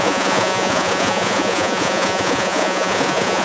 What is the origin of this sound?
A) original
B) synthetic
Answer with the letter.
B